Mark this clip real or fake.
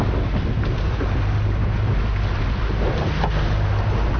real